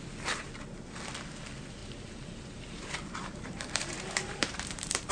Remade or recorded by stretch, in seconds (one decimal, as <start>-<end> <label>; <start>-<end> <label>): 0.0-1.8 recorded; 1.8-5.1 remade